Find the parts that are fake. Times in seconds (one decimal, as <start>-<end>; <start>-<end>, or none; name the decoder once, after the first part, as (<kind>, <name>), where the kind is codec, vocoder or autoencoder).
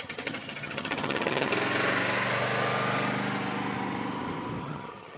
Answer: 0.0-1.5 (vocoder, HiFi-GAN); 4.6-5.2